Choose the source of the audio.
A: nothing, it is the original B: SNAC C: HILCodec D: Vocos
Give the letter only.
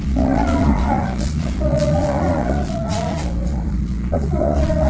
D